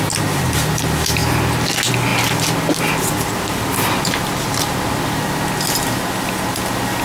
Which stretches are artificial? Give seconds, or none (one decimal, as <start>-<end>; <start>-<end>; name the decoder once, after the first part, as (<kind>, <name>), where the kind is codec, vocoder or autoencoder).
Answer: none